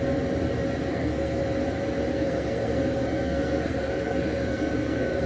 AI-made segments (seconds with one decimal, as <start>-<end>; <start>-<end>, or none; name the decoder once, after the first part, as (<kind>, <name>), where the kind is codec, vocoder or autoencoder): 0.9-1.4 (codec, SNAC); 2.1-5.3